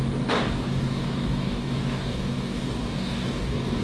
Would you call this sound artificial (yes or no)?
yes